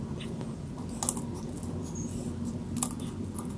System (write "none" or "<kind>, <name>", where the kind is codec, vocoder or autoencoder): none